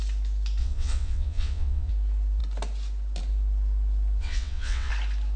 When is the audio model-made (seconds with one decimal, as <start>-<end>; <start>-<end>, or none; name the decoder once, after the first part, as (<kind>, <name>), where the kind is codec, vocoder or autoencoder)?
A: 0.6-1.9 (vocoder, WaveNeXt); 4.2-4.9